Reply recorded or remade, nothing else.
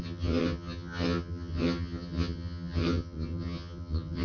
remade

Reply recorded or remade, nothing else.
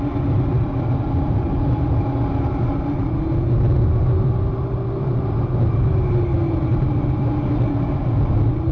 recorded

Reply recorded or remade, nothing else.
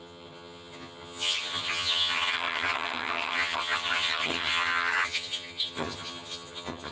remade